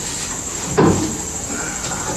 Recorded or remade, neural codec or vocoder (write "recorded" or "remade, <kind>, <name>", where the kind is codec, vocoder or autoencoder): recorded